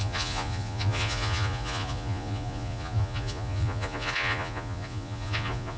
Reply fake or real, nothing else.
fake